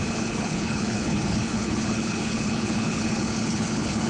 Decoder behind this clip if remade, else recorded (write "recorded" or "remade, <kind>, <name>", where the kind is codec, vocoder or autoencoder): remade, codec, HILCodec